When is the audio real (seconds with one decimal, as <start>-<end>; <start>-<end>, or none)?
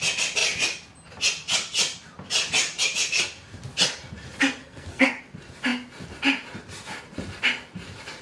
0.0-4.6; 5.2-8.2